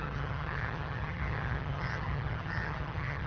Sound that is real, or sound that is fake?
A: fake